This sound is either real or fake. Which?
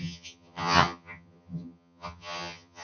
fake